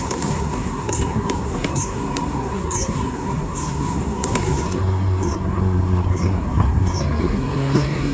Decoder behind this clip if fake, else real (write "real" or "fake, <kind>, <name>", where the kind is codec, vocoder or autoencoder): fake, codec, SNAC